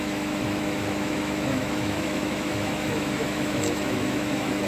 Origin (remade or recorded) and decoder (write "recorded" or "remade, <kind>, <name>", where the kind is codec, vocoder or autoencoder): remade, autoencoder, DAC-VAE